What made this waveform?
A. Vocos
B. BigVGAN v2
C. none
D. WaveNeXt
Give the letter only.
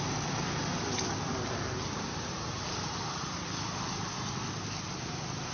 C